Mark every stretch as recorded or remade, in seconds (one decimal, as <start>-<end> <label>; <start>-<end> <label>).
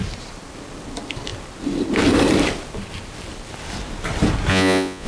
0.0-4.5 recorded; 4.5-5.1 remade